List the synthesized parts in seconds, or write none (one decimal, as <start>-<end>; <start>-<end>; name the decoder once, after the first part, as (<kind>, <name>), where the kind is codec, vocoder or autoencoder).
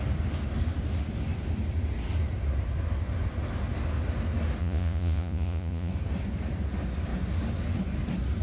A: 4.6-5.9 (vocoder, Vocos)